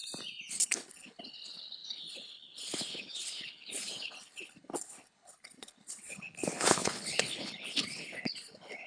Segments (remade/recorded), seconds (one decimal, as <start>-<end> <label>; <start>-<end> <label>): 0.0-0.5 recorded; 0.5-8.9 remade